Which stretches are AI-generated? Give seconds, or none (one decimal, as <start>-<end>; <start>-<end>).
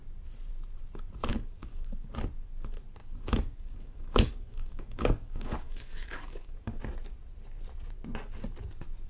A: 1.3-2.1; 3.0-6.8